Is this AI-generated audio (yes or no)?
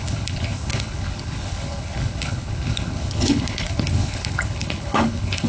yes